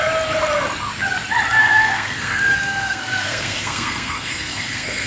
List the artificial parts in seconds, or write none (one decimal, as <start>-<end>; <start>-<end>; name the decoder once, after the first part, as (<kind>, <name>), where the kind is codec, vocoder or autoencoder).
1.6-5.1 (codec, SNAC)